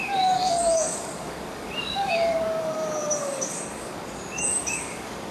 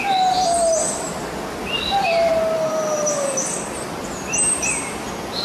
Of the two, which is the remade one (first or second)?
first